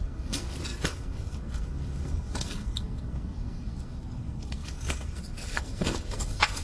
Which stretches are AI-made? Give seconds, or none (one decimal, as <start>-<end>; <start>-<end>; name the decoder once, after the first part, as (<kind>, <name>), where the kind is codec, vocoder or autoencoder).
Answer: 0.0-6.6 (codec, SNAC)